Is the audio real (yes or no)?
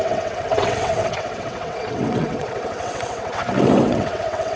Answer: no